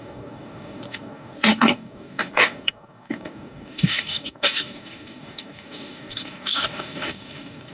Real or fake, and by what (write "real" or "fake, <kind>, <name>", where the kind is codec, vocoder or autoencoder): fake, codec, DAC